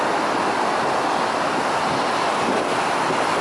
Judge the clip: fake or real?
real